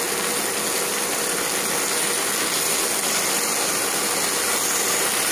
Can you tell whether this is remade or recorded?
recorded